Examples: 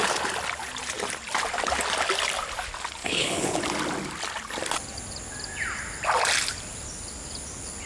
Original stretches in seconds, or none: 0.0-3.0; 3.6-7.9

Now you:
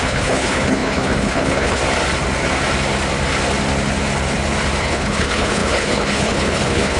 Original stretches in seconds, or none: 1.8-4.8

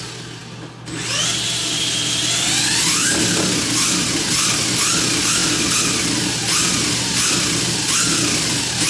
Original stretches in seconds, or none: 0.0-8.9